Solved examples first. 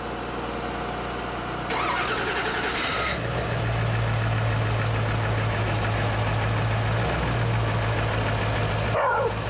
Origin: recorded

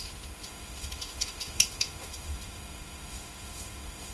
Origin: remade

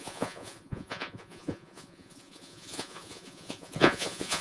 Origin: remade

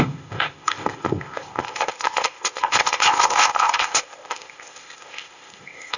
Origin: remade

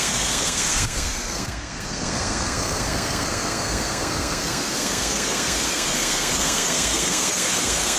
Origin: remade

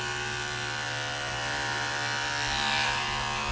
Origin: recorded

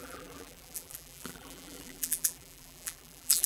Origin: remade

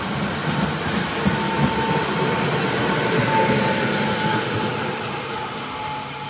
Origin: recorded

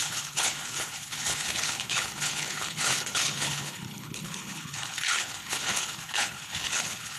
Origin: remade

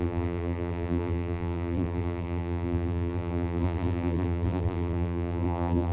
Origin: remade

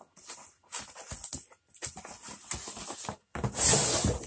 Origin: recorded